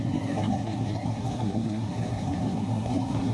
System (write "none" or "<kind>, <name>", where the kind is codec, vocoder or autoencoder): codec, SNAC